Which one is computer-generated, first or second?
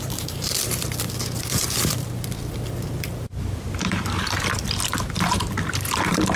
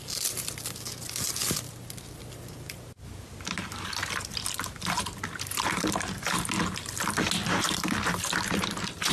first